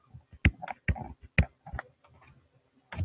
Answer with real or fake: real